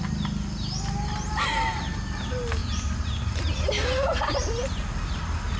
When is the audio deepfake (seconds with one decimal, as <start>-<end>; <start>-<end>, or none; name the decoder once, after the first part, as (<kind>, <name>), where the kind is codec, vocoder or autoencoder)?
none